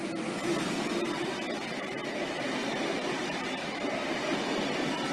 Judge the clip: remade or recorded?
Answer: recorded